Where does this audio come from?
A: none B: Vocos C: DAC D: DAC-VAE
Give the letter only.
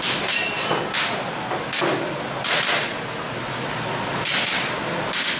A